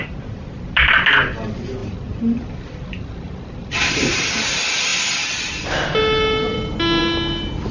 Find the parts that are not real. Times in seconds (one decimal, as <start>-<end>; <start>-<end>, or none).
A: none